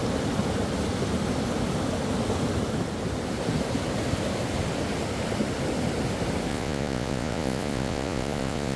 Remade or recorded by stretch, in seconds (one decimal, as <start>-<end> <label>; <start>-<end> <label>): 0.0-6.5 recorded; 6.5-8.8 remade